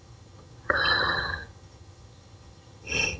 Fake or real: fake